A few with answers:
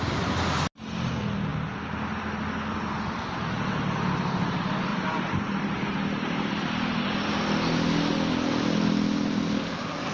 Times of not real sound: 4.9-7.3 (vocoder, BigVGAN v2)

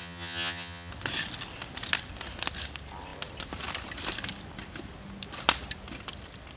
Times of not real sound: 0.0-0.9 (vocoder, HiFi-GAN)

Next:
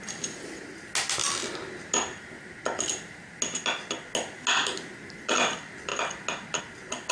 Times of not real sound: none

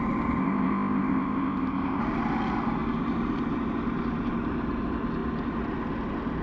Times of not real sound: 0.4-2.0 (codec, ZipCodec)

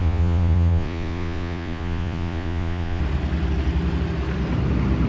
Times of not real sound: 0.0-3.0 (vocoder, Vocos)

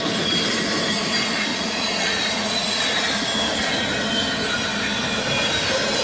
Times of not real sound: 1.5-2.8 (vocoder, Vocos)